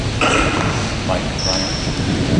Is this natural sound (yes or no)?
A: yes